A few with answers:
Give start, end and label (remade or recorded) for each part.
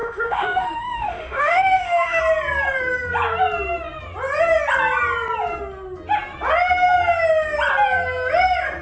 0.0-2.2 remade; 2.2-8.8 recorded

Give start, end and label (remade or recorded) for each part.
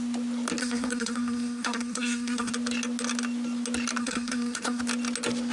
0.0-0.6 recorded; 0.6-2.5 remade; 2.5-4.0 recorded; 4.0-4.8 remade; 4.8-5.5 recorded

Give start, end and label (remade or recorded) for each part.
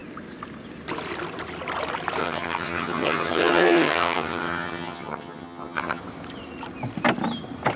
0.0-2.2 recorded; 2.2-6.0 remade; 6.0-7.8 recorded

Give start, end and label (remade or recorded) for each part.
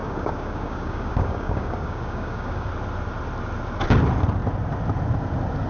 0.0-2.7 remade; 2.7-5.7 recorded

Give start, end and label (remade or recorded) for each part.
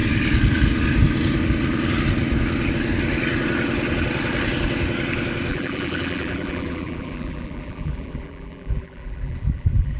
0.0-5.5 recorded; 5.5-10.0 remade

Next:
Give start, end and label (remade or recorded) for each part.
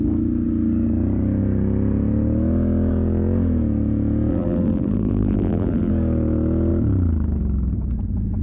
0.0-4.3 recorded; 4.3-5.9 remade; 5.9-8.4 recorded